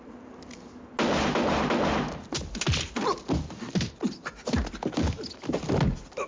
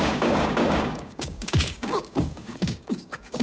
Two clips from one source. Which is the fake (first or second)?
second